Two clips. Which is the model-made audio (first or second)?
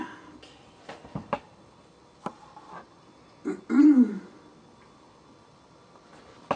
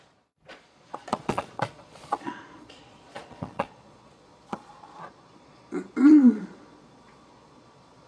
second